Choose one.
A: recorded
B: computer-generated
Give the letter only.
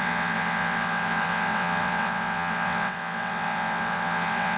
B